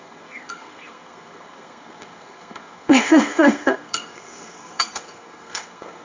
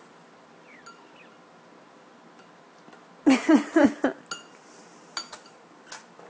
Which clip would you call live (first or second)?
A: second